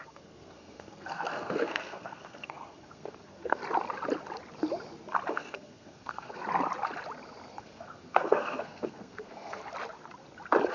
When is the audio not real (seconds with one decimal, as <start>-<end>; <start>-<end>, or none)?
0.0-3.6; 5.3-6.4; 7.6-9.6